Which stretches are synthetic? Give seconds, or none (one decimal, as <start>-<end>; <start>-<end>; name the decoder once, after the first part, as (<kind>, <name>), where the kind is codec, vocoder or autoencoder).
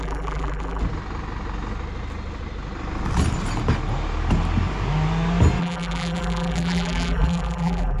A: 0.0-0.8 (vocoder, BigVGAN v2); 5.6-8.0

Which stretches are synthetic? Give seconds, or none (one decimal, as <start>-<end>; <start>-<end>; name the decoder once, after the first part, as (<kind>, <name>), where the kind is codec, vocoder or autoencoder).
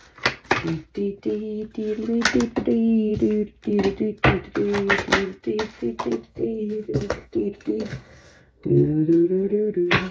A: 6.1-10.1 (codec, SNAC)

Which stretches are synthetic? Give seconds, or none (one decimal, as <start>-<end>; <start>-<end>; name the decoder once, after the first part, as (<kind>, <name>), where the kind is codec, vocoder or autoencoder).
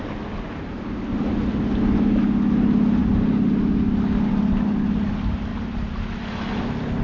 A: none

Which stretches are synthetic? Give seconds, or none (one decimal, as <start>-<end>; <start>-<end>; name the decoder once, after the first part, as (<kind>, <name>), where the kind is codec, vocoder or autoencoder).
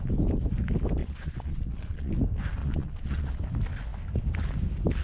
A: 1.0-2.1 (vocoder, Vocos); 2.6-3.4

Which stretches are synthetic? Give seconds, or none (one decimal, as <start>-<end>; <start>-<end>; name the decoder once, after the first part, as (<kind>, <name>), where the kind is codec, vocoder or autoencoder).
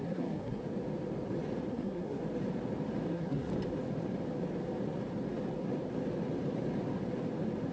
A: 0.0-0.6 (codec, SNAC); 1.7-2.2; 3.1-3.5